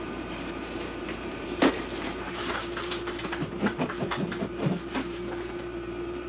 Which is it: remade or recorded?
remade